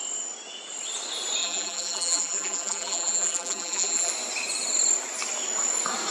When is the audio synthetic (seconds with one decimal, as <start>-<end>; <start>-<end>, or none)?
1.4-4.1